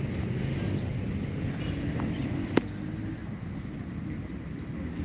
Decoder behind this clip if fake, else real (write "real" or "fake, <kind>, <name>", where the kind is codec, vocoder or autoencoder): real